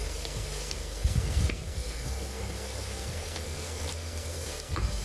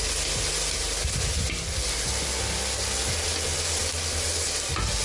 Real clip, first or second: second